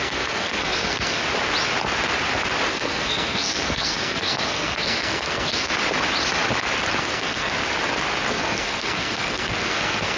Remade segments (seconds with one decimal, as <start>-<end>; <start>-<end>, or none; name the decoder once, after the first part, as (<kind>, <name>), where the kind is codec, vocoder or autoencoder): 0.0-1.2 (codec, SNAC); 2.7-5.7; 7.0-7.5; 8.3-10.2